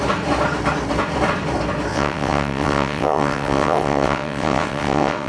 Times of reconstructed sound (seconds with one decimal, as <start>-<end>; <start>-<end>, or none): 1.9-5.3